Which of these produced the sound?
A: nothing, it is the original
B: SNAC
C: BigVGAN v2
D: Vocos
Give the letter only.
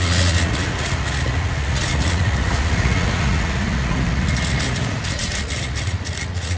D